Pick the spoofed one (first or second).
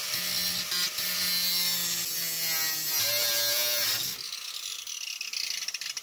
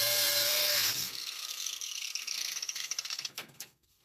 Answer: second